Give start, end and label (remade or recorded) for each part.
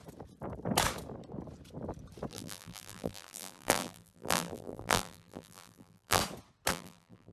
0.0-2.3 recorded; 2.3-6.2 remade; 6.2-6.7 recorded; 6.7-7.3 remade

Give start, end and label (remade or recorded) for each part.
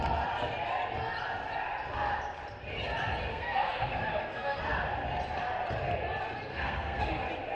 0.0-3.3 recorded; 3.3-4.6 remade; 4.6-6.5 recorded; 6.5-7.1 remade; 7.1-7.5 recorded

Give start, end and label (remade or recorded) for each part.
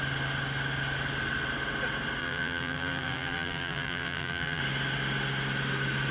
0.0-2.2 recorded; 2.2-4.6 remade; 4.6-6.1 recorded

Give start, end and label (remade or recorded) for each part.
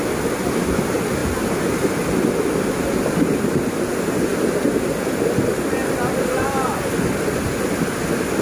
0.0-4.3 recorded; 4.3-5.1 remade; 5.1-8.4 recorded